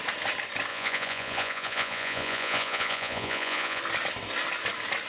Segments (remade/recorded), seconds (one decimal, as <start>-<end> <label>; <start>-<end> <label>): 0.0-0.7 recorded; 0.7-3.8 remade; 3.8-5.1 recorded